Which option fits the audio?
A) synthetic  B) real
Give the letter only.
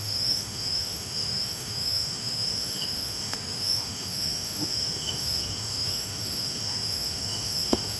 A